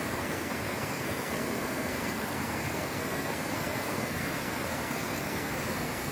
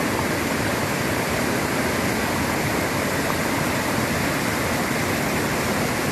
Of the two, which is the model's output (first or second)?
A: first